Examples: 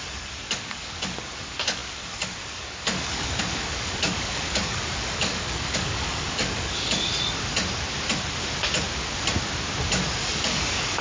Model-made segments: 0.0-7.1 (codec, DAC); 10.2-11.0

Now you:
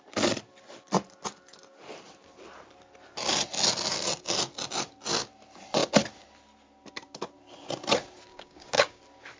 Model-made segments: 8.3-9.0 (codec, DAC)

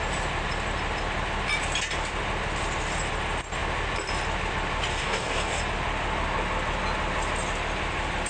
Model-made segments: 4.9-5.6 (codec, DAC)

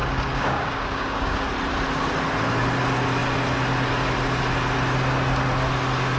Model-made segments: 0.0-1.5 (codec, DAC)

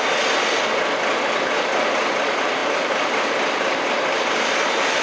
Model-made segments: none